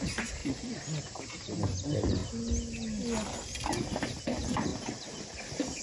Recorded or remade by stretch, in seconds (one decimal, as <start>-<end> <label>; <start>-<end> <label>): 0.0-0.4 remade; 0.4-1.0 recorded; 1.0-2.2 remade; 2.2-4.2 recorded; 4.2-5.8 remade